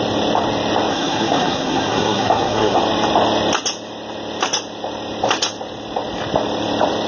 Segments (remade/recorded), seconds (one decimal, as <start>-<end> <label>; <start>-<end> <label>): 0.0-0.9 recorded; 0.9-2.8 remade; 2.8-7.1 recorded